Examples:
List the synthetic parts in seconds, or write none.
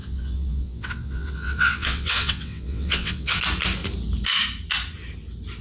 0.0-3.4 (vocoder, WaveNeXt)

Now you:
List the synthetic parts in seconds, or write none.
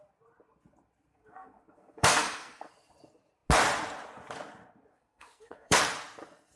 1.1-2.7 (codec, SNAC); 4.9-5.8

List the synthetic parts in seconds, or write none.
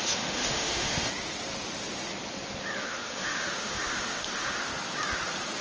0.0-1.1 (autoencoder, DAC-VAE); 2.8-4.7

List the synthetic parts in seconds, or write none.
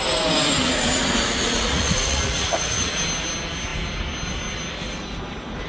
0.6-2.9 (vocoder, Vocos)